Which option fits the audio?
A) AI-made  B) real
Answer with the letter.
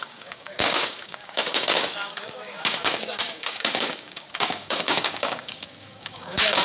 A